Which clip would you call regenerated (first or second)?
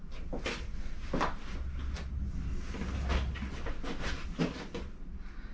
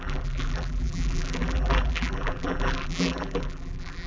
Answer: second